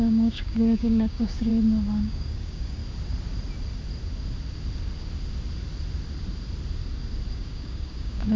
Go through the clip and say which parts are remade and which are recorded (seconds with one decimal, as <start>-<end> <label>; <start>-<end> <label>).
0.0-1.5 remade; 1.5-2.0 recorded; 2.0-2.8 remade; 2.8-7.3 recorded; 7.3-8.4 remade